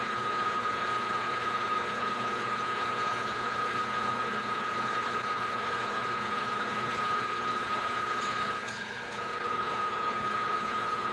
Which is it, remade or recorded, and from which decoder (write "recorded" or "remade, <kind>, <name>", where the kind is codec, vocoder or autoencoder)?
remade, codec, HILCodec